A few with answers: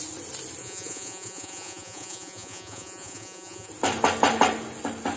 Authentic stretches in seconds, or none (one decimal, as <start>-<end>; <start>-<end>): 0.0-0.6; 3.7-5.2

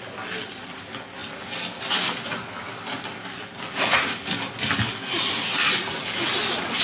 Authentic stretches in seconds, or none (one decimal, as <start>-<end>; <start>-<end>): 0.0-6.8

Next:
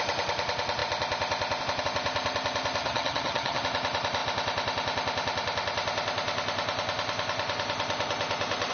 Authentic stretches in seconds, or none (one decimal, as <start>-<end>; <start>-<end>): 0.0-2.8; 3.6-8.7

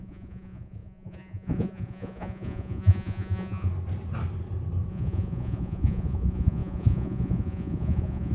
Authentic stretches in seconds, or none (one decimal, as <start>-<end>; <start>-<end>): 3.7-4.9